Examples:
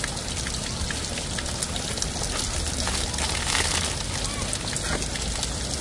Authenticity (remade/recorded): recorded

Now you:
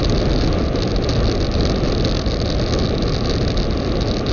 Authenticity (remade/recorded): recorded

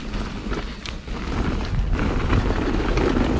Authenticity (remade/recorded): recorded